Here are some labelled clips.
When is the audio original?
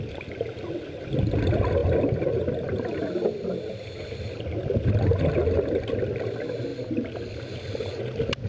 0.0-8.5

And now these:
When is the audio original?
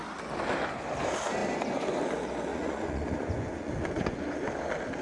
0.0-2.5; 4.2-5.0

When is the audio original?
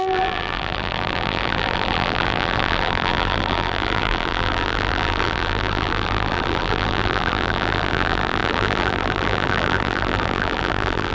none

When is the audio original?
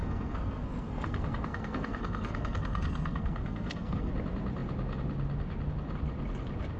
4.1-6.8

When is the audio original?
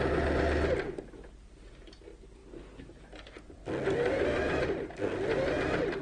0.0-6.0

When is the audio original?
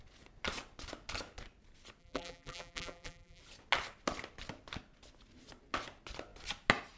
0.0-2.0; 3.4-7.0